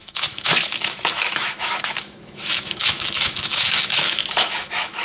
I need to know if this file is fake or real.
fake